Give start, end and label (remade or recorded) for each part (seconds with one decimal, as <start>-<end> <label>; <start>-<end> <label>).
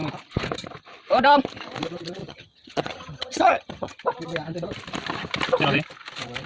0.0-2.2 recorded; 2.2-4.0 remade; 4.0-6.5 recorded